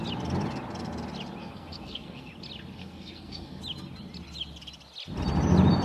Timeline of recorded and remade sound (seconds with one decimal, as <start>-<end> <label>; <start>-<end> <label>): 0.0-1.4 recorded; 1.4-2.3 remade; 2.3-2.8 recorded; 2.8-3.6 remade; 3.6-5.8 recorded